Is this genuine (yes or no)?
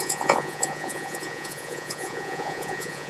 no